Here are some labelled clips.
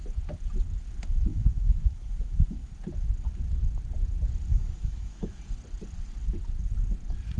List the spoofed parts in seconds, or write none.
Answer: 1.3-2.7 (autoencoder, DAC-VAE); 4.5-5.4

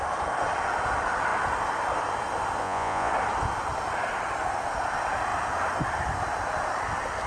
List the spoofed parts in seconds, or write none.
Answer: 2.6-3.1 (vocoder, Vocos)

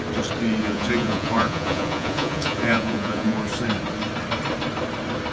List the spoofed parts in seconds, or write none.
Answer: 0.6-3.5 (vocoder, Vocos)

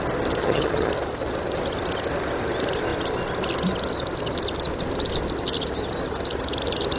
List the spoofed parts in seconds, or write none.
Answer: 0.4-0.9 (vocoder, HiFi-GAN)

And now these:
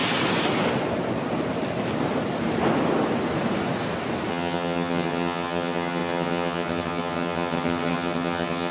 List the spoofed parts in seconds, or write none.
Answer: 4.3-8.7 (vocoder, HiFi-GAN)

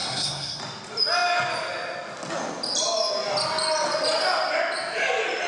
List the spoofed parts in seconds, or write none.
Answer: 0.0-0.6 (codec, SNAC)

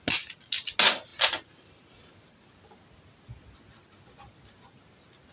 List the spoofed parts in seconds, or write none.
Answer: none

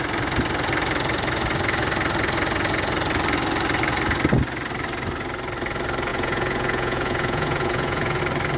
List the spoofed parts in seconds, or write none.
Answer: 6.1-8.2 (vocoder, Vocos)